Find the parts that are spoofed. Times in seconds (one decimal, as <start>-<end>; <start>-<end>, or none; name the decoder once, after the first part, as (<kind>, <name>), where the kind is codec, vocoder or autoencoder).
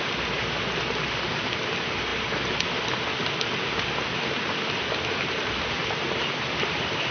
none